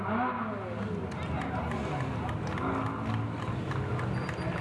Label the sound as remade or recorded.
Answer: recorded